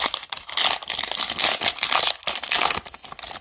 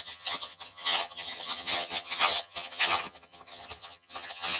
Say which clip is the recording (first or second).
first